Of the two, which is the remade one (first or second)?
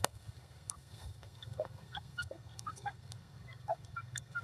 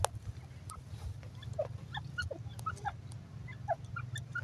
first